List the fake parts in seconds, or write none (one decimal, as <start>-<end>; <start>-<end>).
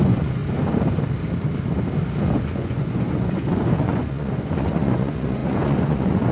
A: 0.0-0.4; 2.3-6.3